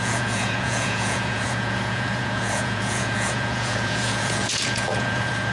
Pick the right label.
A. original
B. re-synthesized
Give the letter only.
B